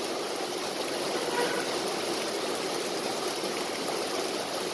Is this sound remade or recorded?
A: recorded